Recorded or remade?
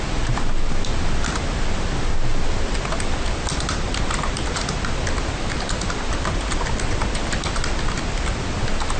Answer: recorded